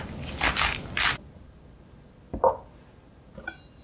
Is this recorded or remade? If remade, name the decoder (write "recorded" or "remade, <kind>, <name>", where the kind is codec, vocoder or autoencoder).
recorded